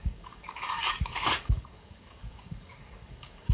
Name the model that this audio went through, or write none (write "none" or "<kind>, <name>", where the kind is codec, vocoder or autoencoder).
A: codec, DAC